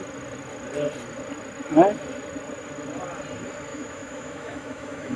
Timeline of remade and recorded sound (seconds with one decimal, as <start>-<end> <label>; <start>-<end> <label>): 0.0-3.7 recorded; 3.7-5.2 remade